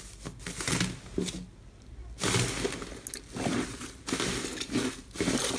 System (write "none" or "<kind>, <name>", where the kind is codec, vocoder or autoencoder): none